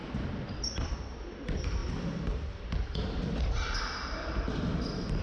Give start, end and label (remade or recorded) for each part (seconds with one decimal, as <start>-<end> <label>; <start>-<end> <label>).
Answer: 0.0-0.9 remade; 0.9-1.8 recorded; 1.8-5.2 remade